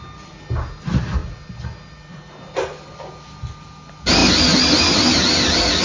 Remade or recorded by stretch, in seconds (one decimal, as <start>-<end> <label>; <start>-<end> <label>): 0.0-5.8 recorded

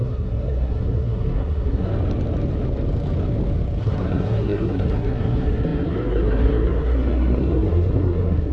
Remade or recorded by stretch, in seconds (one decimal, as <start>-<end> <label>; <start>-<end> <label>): 0.0-1.9 remade; 1.9-3.8 recorded; 3.8-8.5 remade